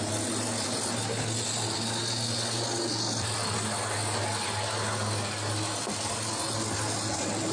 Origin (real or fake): real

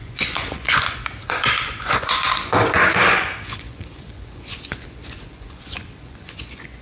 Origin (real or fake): fake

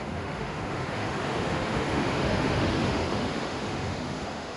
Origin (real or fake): fake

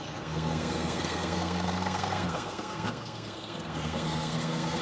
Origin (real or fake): fake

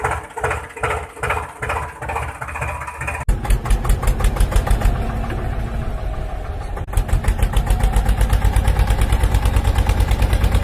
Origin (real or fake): real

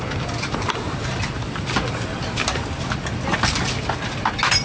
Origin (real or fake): fake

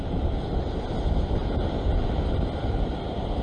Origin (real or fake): real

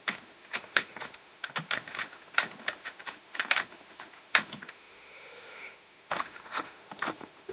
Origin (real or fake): fake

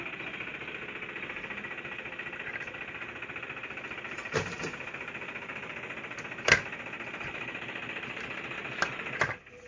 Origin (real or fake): real